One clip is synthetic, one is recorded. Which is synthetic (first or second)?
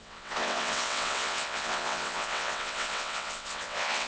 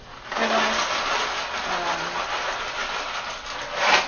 first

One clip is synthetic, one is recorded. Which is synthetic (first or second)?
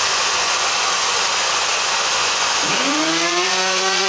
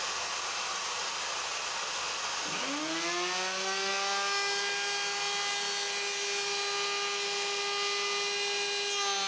first